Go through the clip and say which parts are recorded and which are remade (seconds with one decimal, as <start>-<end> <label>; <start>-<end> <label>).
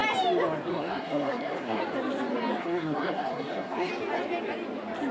0.0-0.7 recorded; 0.7-1.8 remade; 1.8-2.6 recorded; 2.6-3.9 remade; 3.9-5.1 recorded